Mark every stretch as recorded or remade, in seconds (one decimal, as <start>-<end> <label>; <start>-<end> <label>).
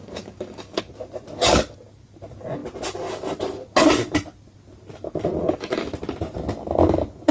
0.0-0.8 remade; 0.8-5.4 recorded; 5.4-5.9 remade; 5.9-7.3 recorded